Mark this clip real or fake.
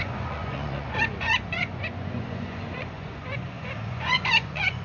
fake